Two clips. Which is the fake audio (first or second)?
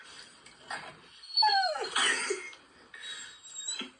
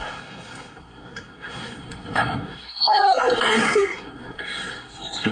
second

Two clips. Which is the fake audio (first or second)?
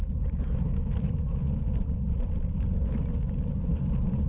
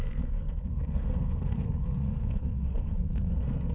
second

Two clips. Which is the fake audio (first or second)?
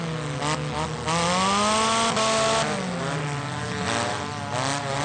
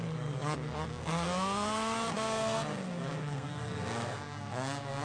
second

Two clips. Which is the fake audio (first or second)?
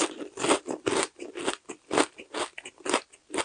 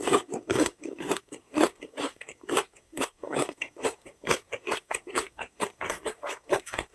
second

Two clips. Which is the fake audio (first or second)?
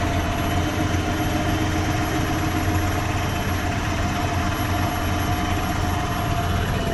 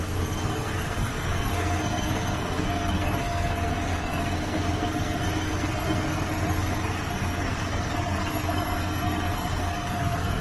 second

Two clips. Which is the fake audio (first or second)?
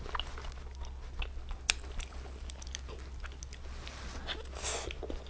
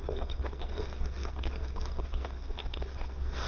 second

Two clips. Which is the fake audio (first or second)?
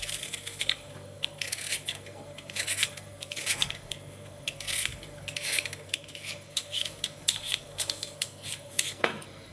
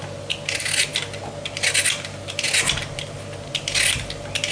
first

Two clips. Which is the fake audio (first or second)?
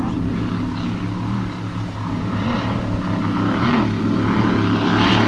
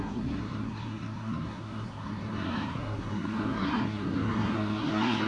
second